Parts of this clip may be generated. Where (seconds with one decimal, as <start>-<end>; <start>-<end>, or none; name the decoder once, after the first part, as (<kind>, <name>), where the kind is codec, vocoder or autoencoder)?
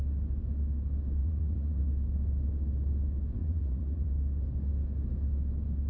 1.2-1.8 (vocoder, Vocos); 3.4-4.1